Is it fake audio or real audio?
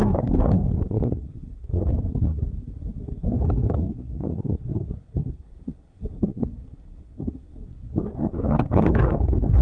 fake